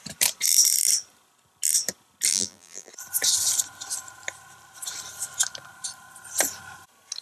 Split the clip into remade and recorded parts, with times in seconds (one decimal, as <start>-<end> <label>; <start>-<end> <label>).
0.0-2.3 recorded; 2.3-2.9 remade; 2.9-7.2 recorded